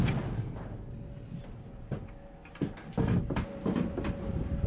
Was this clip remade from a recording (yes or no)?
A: no